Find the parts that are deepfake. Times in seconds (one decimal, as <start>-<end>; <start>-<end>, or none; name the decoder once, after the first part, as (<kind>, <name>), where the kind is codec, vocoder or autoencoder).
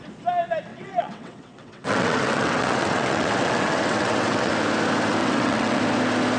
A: 0.7-4.5 (vocoder, WaveNeXt); 5.2-5.8